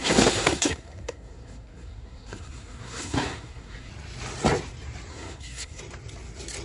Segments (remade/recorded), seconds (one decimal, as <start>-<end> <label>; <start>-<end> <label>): 0.0-3.9 remade; 3.9-5.1 recorded; 5.1-5.8 remade; 5.8-6.6 recorded